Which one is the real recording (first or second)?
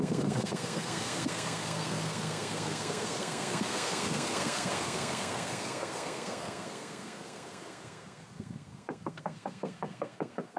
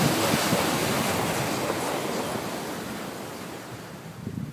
second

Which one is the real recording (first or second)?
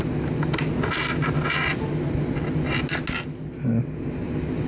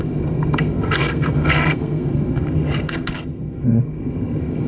first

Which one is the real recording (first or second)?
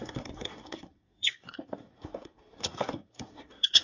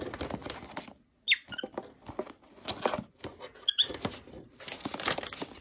second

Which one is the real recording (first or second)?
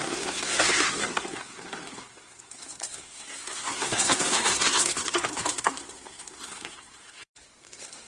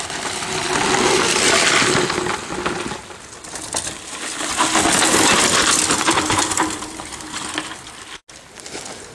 second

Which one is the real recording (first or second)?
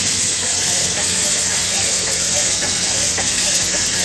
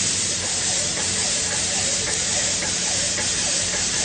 second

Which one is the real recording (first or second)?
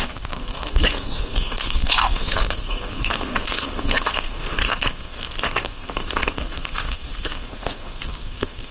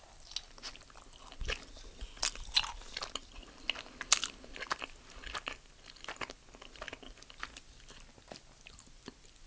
second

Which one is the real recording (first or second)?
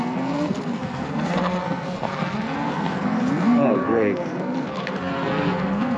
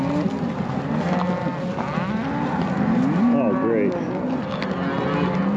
second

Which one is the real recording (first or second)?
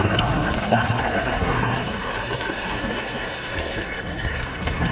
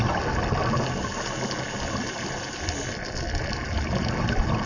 second